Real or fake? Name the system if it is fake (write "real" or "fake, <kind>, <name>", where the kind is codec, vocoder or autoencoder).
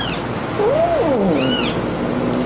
real